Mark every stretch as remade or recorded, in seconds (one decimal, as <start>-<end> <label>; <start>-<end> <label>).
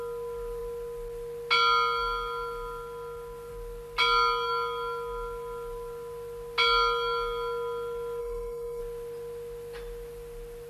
0.0-8.2 recorded; 8.2-8.8 remade; 8.8-10.7 recorded